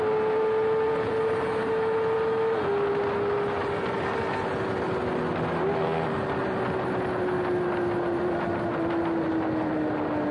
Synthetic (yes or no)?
no